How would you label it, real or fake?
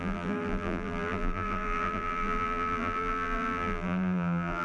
fake